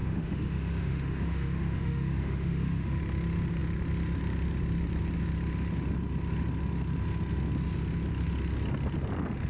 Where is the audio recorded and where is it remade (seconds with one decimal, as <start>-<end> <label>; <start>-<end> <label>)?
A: 0.0-3.0 remade; 3.0-9.5 recorded